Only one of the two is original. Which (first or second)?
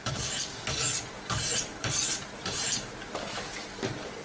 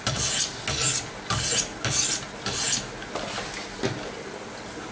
second